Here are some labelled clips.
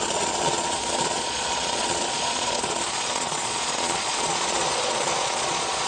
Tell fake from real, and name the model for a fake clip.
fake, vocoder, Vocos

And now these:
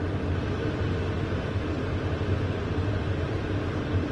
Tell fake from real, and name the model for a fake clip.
real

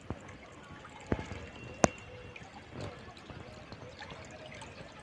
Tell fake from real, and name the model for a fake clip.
real